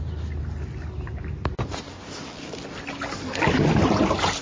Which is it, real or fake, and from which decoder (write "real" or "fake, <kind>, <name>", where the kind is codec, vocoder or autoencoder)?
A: real